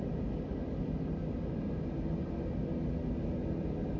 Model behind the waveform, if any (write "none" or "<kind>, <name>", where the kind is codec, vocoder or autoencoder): none